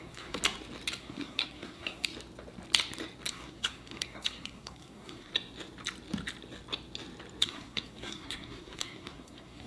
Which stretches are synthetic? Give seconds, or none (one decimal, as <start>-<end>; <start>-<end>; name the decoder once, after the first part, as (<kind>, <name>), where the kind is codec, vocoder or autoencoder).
0.0-0.4 (codec, SNAC); 1.0-2.1; 3.3-5.3; 7.4-9.7